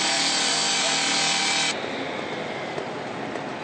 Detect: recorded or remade recorded